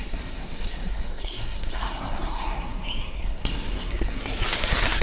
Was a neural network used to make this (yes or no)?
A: yes